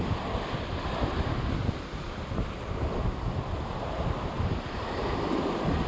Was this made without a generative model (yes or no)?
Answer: yes